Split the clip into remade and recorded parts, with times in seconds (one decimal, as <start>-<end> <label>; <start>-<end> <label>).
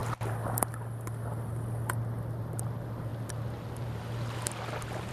0.0-5.1 recorded